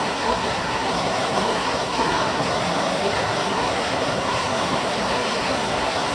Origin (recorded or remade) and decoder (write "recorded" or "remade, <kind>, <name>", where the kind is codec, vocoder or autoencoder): remade, codec, SNAC